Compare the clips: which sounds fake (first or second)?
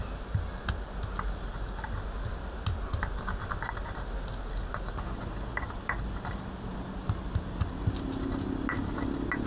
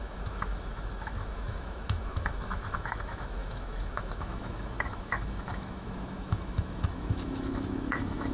second